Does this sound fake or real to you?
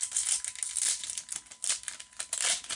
real